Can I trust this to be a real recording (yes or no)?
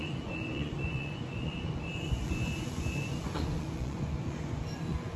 no